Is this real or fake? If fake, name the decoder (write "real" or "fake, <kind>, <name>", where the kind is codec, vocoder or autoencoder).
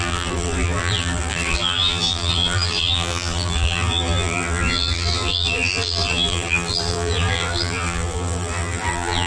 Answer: fake, vocoder, BigVGAN v2